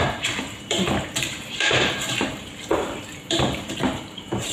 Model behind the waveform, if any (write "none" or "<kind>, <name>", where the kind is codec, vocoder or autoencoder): vocoder, BigVGAN v2